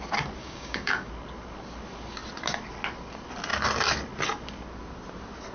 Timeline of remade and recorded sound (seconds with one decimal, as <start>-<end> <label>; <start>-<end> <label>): 0.0-0.4 recorded; 0.4-1.1 remade; 1.1-5.5 recorded